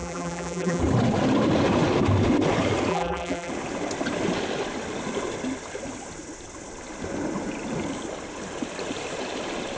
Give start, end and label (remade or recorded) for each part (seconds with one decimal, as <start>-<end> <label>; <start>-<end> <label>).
0.0-0.8 remade; 0.8-2.9 recorded; 2.9-3.5 remade; 3.5-9.8 recorded